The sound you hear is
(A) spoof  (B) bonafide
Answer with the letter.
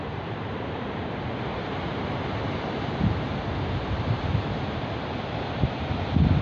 A